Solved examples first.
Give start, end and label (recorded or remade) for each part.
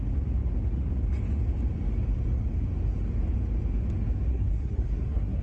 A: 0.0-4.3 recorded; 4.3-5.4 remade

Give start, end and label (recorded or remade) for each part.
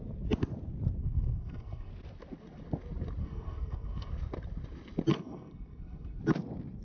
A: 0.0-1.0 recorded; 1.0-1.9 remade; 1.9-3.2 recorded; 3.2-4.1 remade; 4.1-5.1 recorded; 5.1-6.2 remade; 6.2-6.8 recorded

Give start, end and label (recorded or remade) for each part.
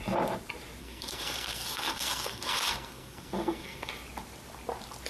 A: 0.0-0.8 recorded; 0.8-3.9 remade; 3.9-5.1 recorded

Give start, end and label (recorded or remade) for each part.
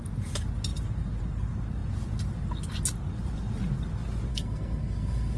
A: 0.0-4.3 recorded; 4.3-5.4 remade